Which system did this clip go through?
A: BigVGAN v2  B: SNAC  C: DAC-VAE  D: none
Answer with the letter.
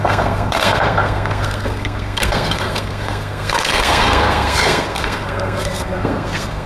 B